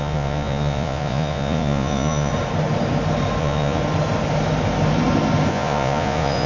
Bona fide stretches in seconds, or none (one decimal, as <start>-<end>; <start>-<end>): 2.3-3.4; 3.8-5.5

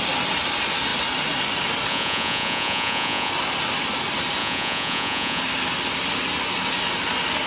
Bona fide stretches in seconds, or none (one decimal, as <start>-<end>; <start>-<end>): 0.0-1.9; 3.3-4.4; 5.4-7.5

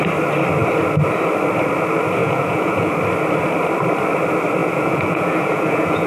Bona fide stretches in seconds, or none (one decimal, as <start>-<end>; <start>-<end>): 0.0-2.2; 2.9-4.6

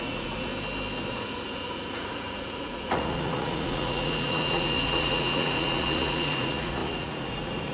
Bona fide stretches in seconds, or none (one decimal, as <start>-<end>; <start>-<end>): 0.5-1.1